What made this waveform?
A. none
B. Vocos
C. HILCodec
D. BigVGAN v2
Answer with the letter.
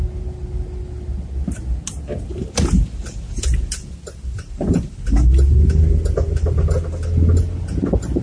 A